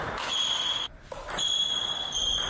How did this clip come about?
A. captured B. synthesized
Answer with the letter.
B